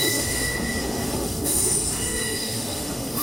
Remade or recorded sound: remade